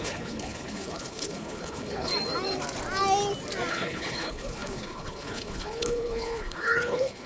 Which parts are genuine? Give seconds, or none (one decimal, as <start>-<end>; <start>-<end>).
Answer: 2.1-3.7